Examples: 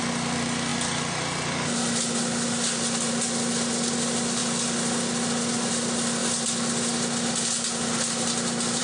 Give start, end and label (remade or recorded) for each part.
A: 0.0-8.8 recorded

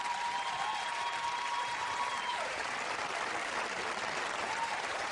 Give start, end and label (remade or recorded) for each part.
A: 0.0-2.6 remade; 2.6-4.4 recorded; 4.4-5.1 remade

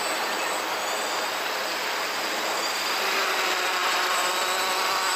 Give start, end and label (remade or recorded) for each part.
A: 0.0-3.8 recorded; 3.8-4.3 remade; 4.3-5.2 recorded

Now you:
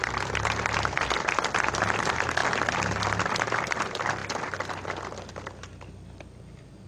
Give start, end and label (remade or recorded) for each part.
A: 0.0-6.9 recorded

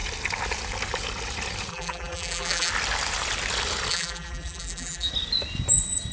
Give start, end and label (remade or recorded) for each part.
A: 0.0-1.7 recorded; 1.7-2.7 remade; 2.7-3.9 recorded; 3.9-5.1 remade; 5.1-6.1 recorded

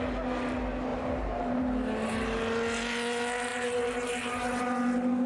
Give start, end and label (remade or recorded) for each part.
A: 0.0-0.9 recorded; 0.9-1.6 remade; 1.6-3.5 recorded; 3.5-4.6 remade; 4.6-5.3 recorded

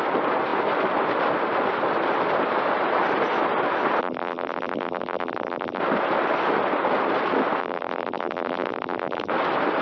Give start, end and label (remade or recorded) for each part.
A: 0.0-4.0 recorded; 4.0-5.8 remade; 5.8-7.6 recorded; 7.6-9.3 remade; 9.3-9.8 recorded

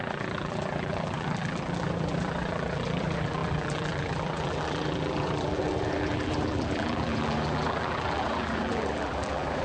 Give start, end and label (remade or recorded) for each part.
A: 0.0-9.6 remade